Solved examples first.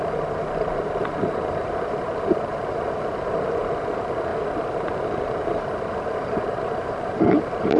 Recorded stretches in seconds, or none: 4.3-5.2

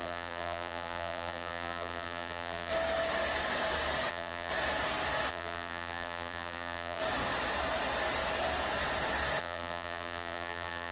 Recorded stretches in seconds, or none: 2.7-4.1; 4.5-5.3; 7.0-9.4

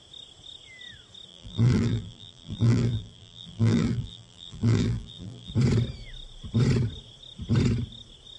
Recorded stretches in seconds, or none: 0.0-1.3; 5.5-8.4

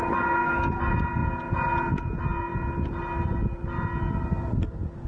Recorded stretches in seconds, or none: 0.0-5.1

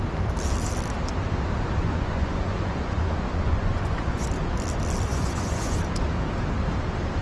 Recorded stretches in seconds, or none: 0.0-1.8; 4.3-5.1; 5.8-7.2